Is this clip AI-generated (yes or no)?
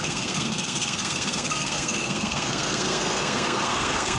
yes